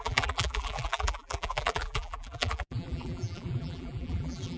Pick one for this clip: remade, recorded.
remade